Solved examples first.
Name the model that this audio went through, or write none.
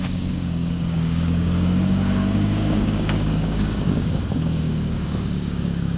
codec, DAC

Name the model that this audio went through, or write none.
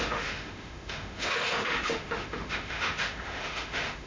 autoencoder, DAC-VAE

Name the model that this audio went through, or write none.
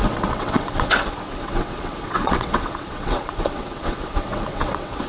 vocoder, WaveNeXt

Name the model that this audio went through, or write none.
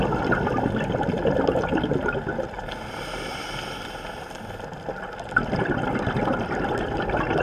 none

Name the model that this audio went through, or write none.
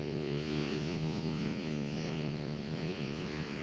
vocoder, Vocos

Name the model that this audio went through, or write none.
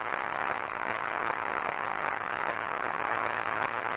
vocoder, HiFi-GAN